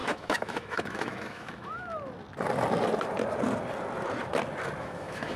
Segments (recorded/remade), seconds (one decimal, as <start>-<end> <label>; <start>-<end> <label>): 0.0-1.9 remade; 1.9-4.8 recorded; 4.8-5.4 remade